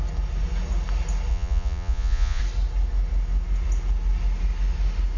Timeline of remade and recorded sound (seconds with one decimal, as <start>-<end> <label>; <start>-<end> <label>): 0.0-1.3 recorded; 1.3-2.4 remade; 2.4-5.2 recorded